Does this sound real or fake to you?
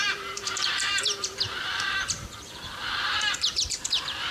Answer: fake